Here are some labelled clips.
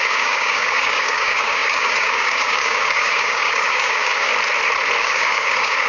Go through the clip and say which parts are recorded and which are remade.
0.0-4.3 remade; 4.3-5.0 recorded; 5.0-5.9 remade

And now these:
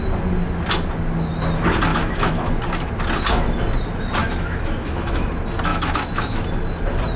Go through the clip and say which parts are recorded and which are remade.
0.0-1.9 recorded; 1.9-2.6 remade; 2.6-4.2 recorded; 4.2-5.3 remade; 5.3-5.7 recorded; 5.7-6.4 remade; 6.4-7.2 recorded

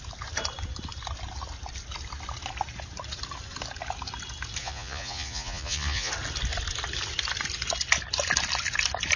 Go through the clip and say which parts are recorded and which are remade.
0.0-4.6 recorded; 4.6-6.1 remade; 6.1-9.2 recorded

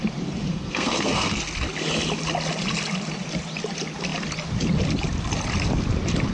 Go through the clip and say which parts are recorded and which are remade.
0.0-0.5 recorded; 0.5-1.4 remade; 1.4-6.3 recorded

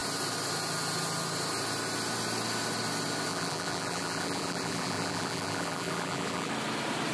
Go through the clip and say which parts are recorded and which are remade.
0.0-3.3 recorded; 3.3-6.5 remade; 6.5-7.1 recorded